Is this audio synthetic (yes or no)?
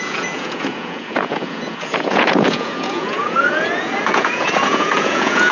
yes